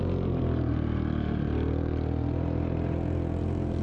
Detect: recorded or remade recorded